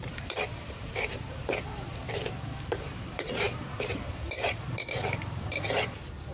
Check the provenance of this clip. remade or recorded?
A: remade